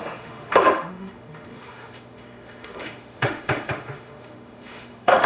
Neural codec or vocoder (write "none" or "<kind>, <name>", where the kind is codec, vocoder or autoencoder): autoencoder, DAC-VAE